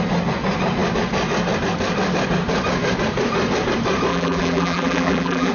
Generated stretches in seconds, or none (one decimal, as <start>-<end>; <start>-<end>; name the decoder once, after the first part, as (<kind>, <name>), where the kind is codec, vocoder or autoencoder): 4.1-5.5 (vocoder, BigVGAN v2)